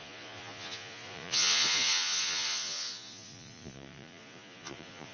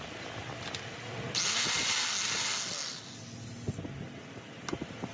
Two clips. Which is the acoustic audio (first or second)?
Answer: second